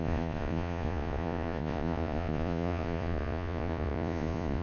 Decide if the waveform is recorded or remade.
remade